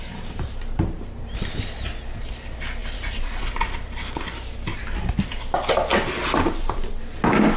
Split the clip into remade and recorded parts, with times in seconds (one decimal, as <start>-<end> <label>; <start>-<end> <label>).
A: 0.0-2.8 recorded; 2.8-5.4 remade; 5.4-5.9 recorded; 5.9-6.5 remade; 6.5-7.6 recorded